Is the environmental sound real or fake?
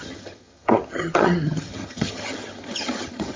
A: fake